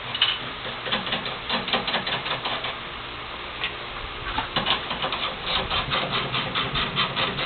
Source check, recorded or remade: recorded